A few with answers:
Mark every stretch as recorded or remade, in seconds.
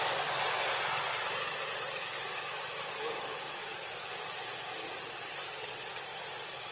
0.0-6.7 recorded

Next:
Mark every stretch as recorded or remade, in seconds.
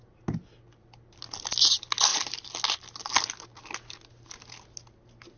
0.0-5.4 recorded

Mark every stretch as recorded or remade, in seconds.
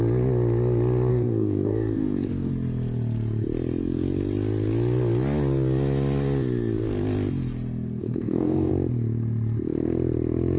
0.0-1.1 recorded; 1.1-2.5 remade; 2.5-8.0 recorded; 8.0-8.7 remade; 8.7-10.6 recorded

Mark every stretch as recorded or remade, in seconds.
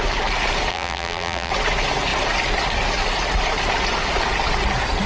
0.0-0.7 recorded; 0.7-1.5 remade; 1.5-5.1 recorded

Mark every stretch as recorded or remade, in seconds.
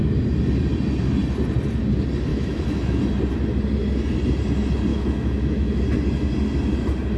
0.0-2.3 recorded; 2.3-3.0 remade; 3.0-4.9 recorded; 4.9-5.8 remade; 5.8-7.2 recorded